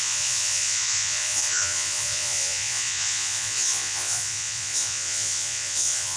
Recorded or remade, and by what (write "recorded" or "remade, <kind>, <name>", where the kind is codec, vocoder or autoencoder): remade, vocoder, Vocos